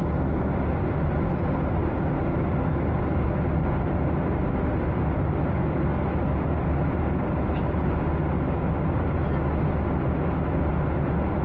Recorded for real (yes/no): yes